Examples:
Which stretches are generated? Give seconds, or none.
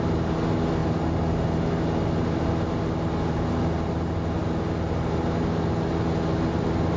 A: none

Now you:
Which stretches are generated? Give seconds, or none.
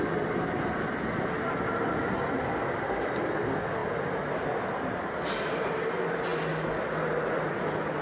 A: none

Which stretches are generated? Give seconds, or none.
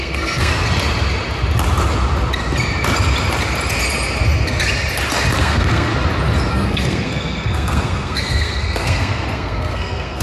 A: 0.0-0.5 (codec, SNAC); 5.4-5.9; 6.5-10.2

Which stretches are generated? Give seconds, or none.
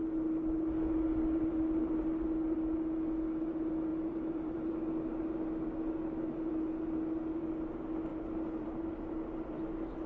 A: 3.9-4.7 (vocoder, BigVGAN v2); 8.1-9.6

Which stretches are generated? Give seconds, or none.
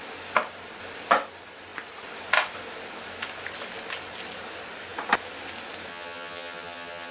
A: 5.9-7.1 (vocoder, HiFi-GAN)